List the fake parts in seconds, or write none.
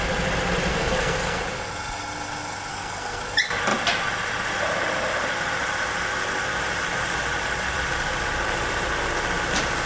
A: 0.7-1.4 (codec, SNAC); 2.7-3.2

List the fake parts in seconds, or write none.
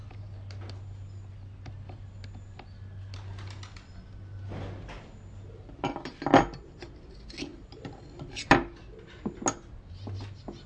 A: none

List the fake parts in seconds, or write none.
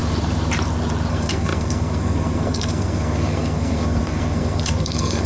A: 1.1-5.3 (codec, SNAC)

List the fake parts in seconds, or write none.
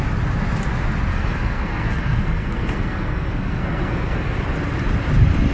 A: 1.1-4.4 (codec, SNAC)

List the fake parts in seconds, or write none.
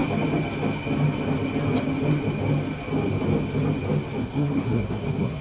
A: 4.2-5.4 (codec, SNAC)